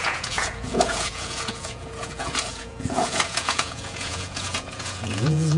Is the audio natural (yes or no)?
no